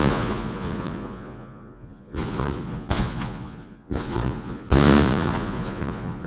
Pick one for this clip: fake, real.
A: fake